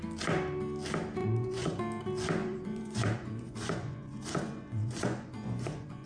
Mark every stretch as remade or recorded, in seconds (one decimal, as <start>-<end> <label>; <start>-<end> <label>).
0.0-1.2 recorded; 1.2-1.8 remade; 1.8-2.4 recorded; 2.4-6.1 remade